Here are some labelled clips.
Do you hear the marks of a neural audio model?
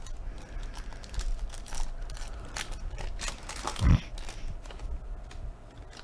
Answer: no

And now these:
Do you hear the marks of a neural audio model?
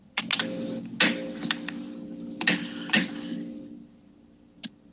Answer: no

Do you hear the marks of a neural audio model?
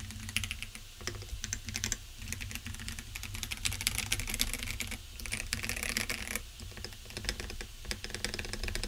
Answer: no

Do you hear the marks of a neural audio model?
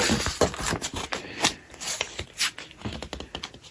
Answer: no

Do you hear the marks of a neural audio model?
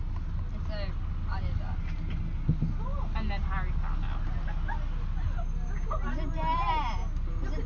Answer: no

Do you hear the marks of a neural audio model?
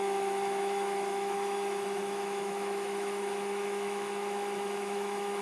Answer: yes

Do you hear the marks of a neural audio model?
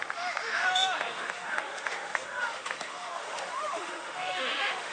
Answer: yes